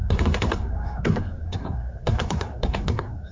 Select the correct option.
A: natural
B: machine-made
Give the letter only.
B